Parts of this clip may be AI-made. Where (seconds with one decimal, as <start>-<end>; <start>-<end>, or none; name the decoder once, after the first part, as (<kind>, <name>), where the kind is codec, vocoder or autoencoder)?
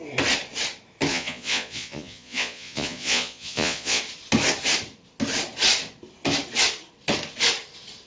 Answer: 1.1-4.0 (vocoder, Vocos)